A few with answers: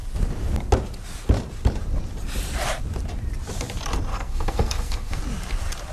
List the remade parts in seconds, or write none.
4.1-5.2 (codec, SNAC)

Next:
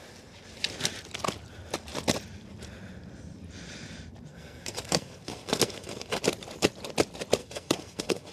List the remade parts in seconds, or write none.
4.3-6.2 (codec, SNAC); 7.4-8.3

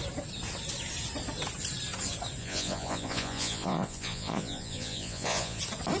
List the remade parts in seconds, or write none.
2.4-5.6 (vocoder, Vocos)

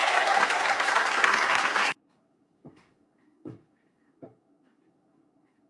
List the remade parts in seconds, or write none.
0.0-5.7 (codec, SNAC)

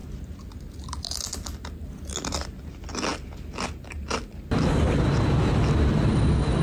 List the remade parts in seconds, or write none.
none

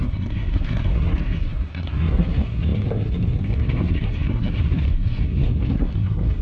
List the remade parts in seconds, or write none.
0.0-6.4 (codec, SNAC)

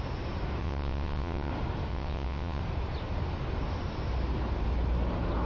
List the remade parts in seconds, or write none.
0.6-1.5 (vocoder, WaveNeXt); 1.9-2.6

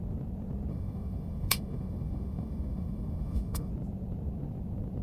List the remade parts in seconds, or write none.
0.7-3.7 (autoencoder, DAC-VAE)